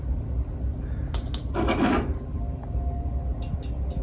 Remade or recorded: recorded